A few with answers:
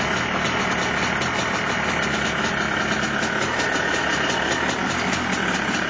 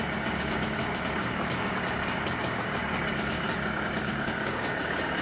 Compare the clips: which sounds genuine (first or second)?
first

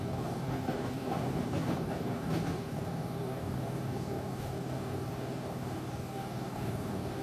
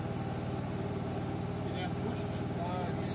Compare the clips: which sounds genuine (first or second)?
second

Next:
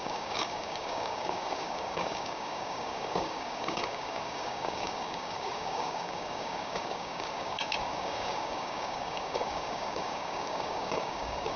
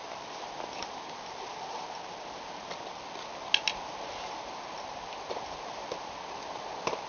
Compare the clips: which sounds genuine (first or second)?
second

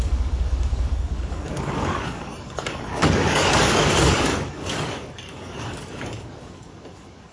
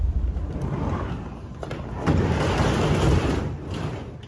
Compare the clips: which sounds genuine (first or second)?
second